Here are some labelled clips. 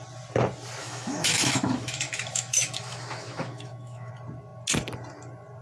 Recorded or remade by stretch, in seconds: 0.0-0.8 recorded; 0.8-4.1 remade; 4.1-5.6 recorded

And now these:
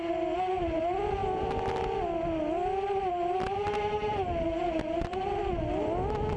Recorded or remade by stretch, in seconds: 0.0-6.4 recorded

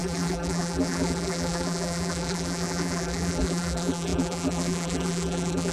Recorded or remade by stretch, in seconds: 0.0-5.7 remade

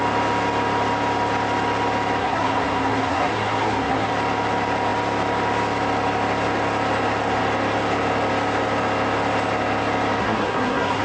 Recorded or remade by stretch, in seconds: 0.0-2.2 recorded; 2.2-4.1 remade; 4.1-10.2 recorded; 10.2-11.0 remade